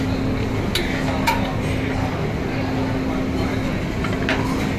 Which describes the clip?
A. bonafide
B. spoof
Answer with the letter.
A